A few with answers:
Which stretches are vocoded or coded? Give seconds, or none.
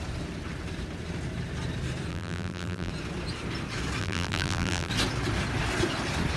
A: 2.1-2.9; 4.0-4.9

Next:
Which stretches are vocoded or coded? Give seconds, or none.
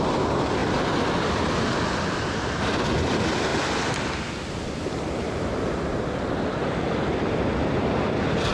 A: none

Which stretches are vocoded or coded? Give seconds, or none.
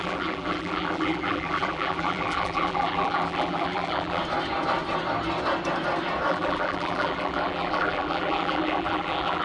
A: 0.0-4.2; 6.3-9.4